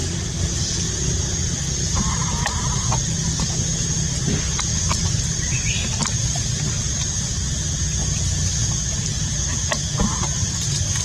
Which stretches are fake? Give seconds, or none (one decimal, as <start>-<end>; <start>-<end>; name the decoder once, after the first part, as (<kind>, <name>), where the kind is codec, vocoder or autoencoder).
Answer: 0.0-1.7 (vocoder, BigVGAN v2); 4.7-5.7; 8.0-10.1